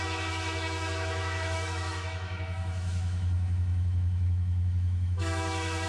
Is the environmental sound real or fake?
fake